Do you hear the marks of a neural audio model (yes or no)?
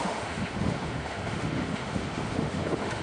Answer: yes